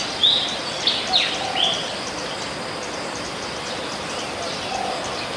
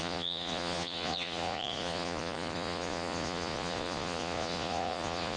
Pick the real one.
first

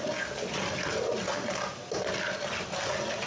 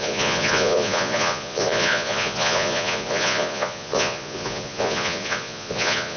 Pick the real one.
first